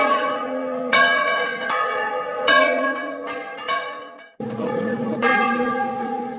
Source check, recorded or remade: remade